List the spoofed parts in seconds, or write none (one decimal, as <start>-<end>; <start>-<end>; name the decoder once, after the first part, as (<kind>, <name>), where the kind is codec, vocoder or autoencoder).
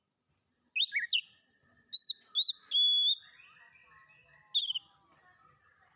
none